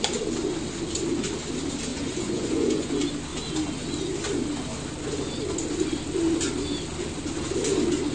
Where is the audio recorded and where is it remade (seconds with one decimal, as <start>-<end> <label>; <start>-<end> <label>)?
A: 0.0-1.9 recorded; 1.9-2.9 remade; 2.9-8.1 recorded